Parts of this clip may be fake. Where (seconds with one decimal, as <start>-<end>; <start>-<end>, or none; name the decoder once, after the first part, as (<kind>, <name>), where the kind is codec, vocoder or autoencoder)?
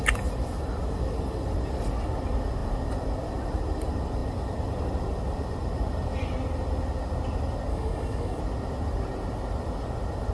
7.7-8.4 (codec, DAC)